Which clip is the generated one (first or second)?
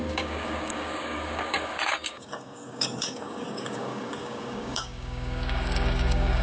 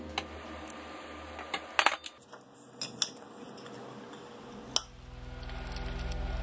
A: first